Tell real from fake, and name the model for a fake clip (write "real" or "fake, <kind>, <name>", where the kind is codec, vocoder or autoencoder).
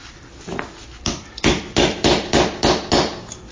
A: real